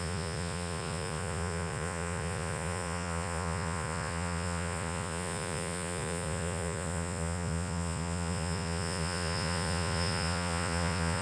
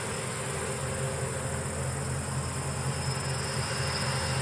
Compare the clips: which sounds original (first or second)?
second